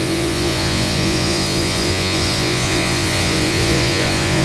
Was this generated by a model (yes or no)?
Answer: yes